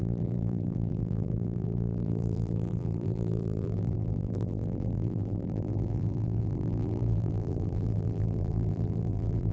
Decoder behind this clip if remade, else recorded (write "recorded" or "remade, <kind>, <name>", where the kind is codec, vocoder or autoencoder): remade, vocoder, BigVGAN v2